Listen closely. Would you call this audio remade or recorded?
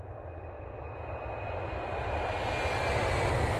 recorded